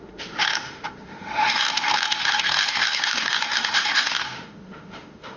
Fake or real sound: fake